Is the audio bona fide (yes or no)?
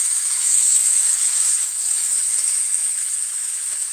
no